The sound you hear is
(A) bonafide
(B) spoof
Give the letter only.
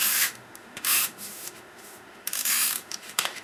B